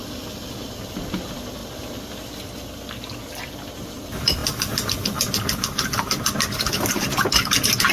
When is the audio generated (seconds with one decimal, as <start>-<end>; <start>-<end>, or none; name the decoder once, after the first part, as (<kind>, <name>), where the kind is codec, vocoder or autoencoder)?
none